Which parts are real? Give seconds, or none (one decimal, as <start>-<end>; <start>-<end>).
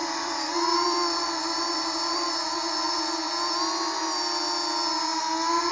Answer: 3.4-5.7